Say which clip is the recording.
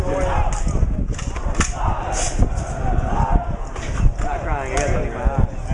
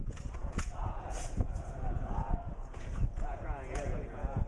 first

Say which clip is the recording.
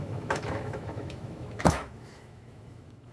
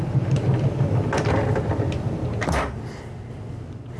second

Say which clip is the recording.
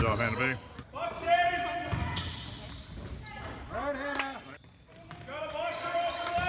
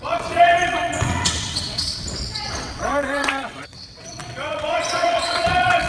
first